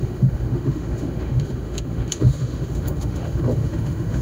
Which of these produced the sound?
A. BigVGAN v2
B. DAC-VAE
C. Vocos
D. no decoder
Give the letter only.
B